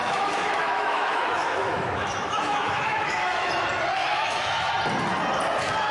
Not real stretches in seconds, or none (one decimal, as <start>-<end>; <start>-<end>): 0.0-3.5; 4.1-4.7